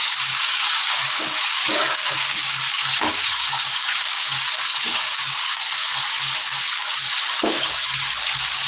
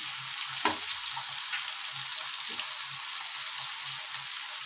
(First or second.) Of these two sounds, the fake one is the first